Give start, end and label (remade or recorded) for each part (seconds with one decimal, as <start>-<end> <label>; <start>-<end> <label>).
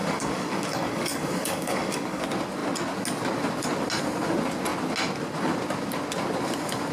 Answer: 0.0-2.2 remade; 2.2-6.9 recorded